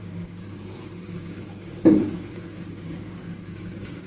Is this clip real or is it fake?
fake